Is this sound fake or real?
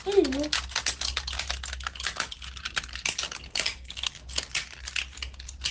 real